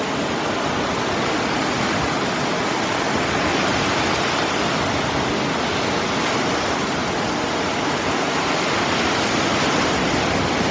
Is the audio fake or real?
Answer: real